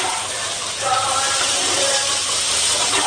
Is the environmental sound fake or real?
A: fake